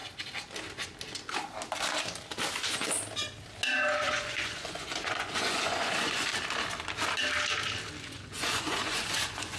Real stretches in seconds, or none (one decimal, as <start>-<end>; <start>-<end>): 0.0-3.7; 6.3-8.0